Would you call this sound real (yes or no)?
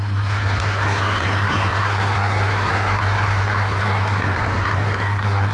no